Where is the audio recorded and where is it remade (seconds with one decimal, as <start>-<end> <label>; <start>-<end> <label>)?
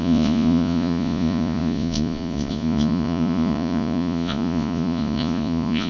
0.0-5.9 remade